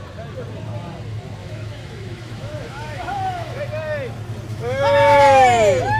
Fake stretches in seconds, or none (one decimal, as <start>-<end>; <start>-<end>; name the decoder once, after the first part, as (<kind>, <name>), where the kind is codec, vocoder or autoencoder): 1.4-3.6 (autoencoder, DAC-VAE); 4.5-5.2